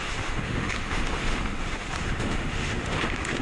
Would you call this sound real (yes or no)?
no